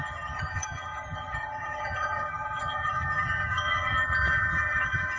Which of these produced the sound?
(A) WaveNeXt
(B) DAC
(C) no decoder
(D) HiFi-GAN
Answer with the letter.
D